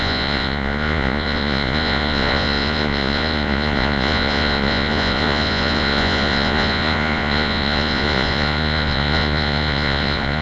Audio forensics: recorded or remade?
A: remade